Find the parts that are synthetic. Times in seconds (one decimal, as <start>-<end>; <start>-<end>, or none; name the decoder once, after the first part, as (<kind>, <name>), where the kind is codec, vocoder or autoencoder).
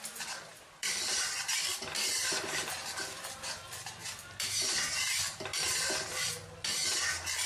0.5-1.3 (vocoder, BigVGAN v2); 4.0-6.3